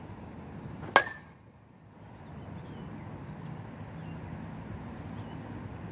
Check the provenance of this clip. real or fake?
real